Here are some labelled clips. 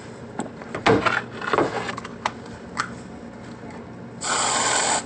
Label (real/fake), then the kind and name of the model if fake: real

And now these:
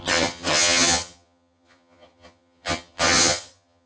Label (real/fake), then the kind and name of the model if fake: fake, vocoder, HiFi-GAN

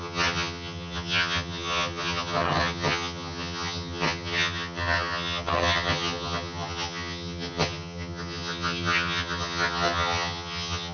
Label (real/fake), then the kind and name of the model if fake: fake, vocoder, HiFi-GAN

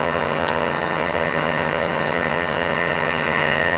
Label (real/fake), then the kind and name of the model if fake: fake, vocoder, HiFi-GAN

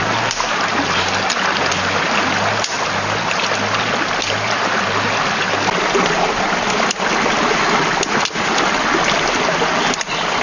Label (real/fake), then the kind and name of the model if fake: real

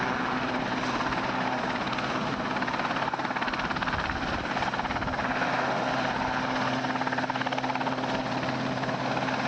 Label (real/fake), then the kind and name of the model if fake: real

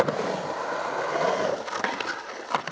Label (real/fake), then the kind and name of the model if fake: real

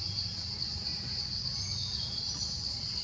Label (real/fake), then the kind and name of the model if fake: real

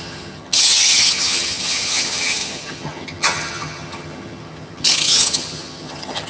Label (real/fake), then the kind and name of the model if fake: fake, vocoder, HiFi-GAN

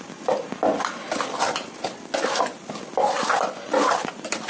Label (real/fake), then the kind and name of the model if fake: real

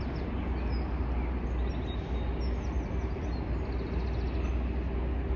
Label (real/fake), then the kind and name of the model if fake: real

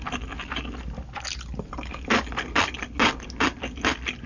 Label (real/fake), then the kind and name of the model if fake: real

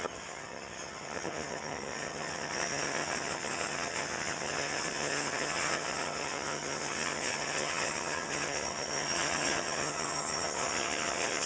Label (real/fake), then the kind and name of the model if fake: fake, vocoder, HiFi-GAN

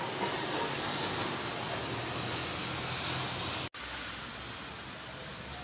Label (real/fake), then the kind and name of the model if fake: real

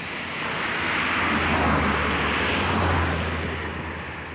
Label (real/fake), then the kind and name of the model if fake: real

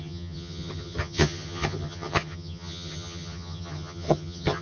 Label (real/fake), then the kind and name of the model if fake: fake, vocoder, HiFi-GAN